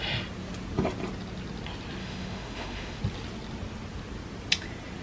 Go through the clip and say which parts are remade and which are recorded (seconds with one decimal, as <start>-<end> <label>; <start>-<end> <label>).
0.0-2.0 recorded; 2.0-3.0 remade; 3.0-5.0 recorded